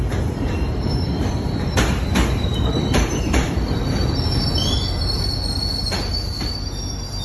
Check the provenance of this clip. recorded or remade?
remade